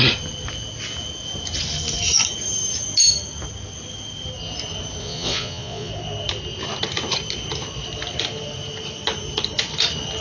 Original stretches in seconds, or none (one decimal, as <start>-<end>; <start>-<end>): 0.0-5.0; 5.9-10.2